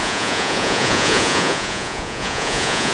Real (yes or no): no